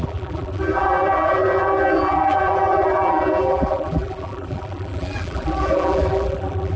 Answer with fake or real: fake